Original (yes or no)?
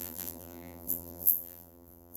no